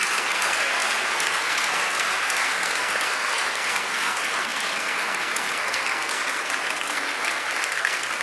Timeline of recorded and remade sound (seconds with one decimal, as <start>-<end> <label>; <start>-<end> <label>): 0.0-8.2 remade